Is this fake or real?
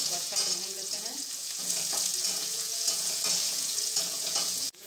fake